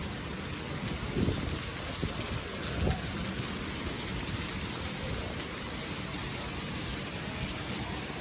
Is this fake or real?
real